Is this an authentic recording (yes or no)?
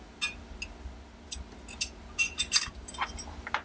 yes